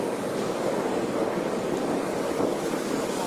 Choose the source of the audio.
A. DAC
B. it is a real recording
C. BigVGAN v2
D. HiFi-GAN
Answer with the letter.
A